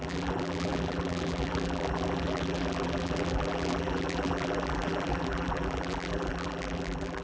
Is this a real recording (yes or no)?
no